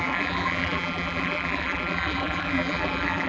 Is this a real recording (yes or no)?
no